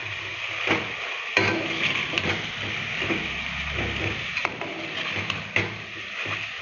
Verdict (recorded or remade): recorded